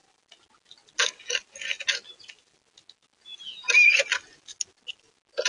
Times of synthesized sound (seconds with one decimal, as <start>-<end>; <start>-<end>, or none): none